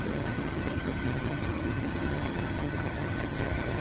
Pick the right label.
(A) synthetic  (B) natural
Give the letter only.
A